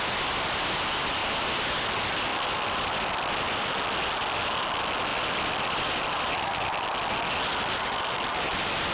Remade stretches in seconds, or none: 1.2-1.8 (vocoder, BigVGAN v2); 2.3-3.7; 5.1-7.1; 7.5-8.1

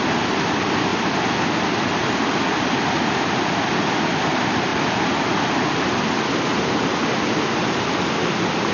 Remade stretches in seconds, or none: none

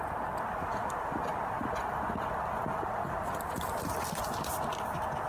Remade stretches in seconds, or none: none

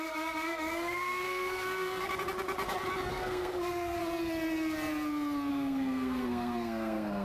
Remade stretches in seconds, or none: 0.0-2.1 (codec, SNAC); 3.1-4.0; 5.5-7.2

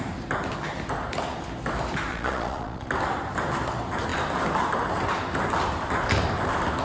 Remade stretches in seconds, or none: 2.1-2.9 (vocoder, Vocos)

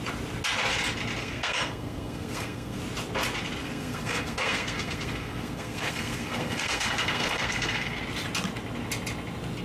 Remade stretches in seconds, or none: 1.2-2.8 (codec, SNAC); 3.6-8.0